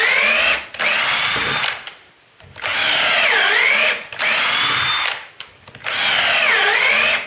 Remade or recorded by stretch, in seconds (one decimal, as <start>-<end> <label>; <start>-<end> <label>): 0.0-0.6 recorded; 0.6-7.3 remade